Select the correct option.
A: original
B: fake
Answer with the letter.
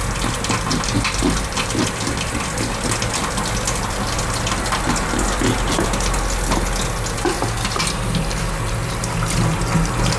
A